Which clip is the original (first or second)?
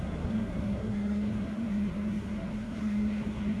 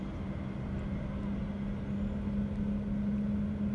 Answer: second